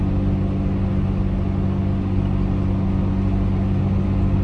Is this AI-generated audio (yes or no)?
no